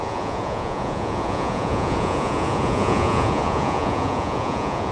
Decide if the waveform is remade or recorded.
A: remade